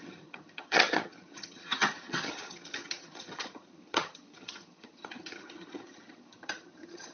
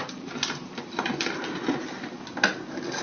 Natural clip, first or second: second